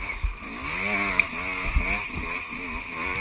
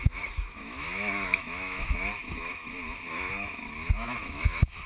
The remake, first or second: second